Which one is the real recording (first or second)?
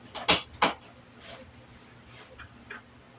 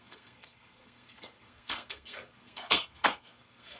first